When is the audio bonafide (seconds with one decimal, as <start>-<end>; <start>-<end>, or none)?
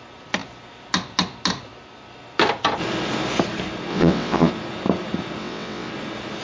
0.0-3.9; 4.5-5.4; 5.9-6.4